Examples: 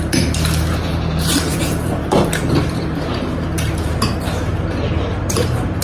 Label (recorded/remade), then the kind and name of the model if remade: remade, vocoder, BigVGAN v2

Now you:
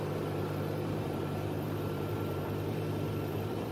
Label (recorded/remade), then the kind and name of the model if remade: remade, vocoder, BigVGAN v2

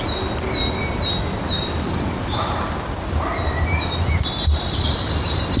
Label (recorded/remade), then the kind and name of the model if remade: recorded